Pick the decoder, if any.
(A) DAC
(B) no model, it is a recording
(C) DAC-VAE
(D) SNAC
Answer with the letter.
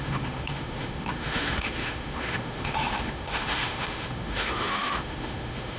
C